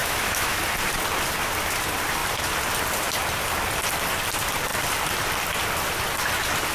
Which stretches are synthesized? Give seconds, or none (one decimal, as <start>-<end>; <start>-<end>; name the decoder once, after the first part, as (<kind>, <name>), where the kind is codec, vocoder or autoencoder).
0.0-0.6 (autoencoder, DAC-VAE)